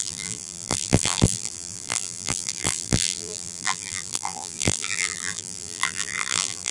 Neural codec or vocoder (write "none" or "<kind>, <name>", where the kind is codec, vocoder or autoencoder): vocoder, BigVGAN v2